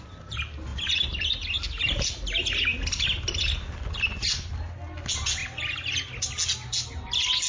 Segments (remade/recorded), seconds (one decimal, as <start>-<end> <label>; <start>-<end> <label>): 0.0-7.5 recorded